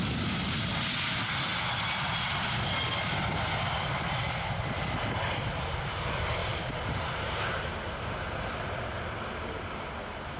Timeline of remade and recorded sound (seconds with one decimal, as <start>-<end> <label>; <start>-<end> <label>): 0.0-6.4 recorded; 6.4-7.6 remade; 7.6-10.4 recorded